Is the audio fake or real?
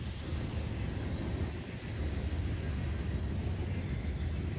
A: real